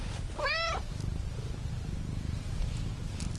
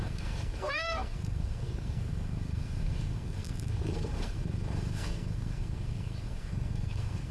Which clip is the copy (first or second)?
second